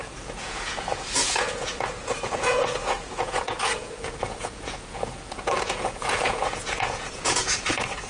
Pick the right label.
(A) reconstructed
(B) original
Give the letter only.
A